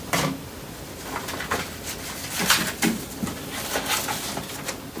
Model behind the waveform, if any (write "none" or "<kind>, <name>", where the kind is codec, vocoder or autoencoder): none